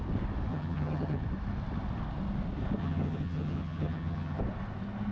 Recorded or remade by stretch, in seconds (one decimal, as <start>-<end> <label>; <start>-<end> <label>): 0.0-0.5 recorded; 0.5-1.2 remade; 1.2-2.8 recorded; 2.8-4.4 remade; 4.4-5.1 recorded